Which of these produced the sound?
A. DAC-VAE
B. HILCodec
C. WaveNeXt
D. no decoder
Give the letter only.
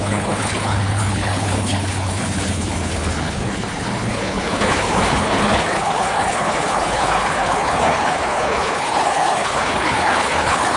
B